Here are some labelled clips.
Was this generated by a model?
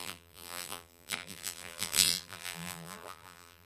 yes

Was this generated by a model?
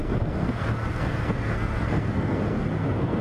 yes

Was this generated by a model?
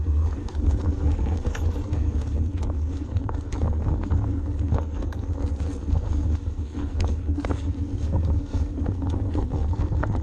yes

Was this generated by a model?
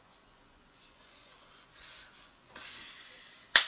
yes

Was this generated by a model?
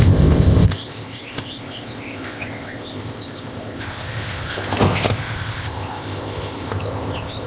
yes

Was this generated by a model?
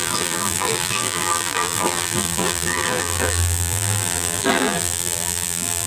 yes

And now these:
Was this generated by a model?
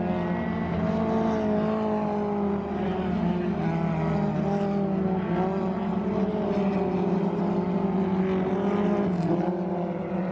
no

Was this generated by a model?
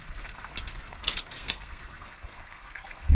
yes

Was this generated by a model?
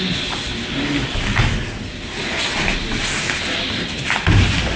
no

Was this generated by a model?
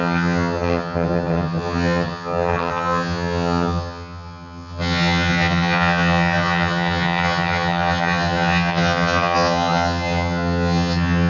yes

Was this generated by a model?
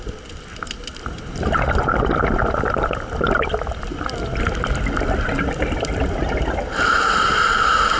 no